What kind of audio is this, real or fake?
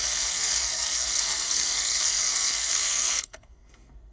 fake